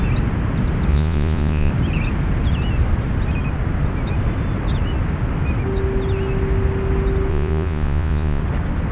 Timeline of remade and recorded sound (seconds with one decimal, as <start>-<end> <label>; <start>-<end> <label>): 0.0-0.9 recorded; 0.9-1.7 remade; 1.7-7.3 recorded; 7.3-8.4 remade; 8.4-8.9 recorded